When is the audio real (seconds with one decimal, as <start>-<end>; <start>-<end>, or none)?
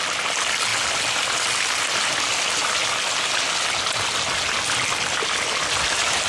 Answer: 0.0-6.3